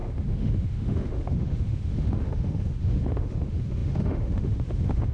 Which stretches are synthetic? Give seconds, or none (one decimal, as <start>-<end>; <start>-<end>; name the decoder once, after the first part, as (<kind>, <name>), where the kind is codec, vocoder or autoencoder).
0.0-5.1 (autoencoder, DAC-VAE)